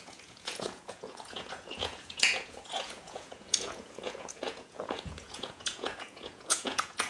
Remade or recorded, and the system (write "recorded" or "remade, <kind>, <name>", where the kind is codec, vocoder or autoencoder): remade, vocoder, Vocos